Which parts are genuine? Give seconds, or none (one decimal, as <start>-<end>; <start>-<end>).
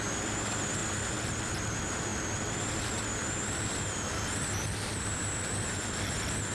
0.0-6.5